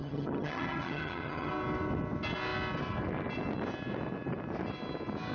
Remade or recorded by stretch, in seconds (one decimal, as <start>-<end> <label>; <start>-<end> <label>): 0.0-1.5 remade; 1.5-5.3 recorded